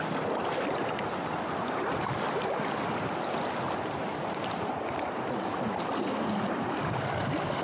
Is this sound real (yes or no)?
yes